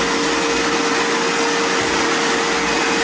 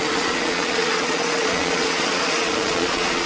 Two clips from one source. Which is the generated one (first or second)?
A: second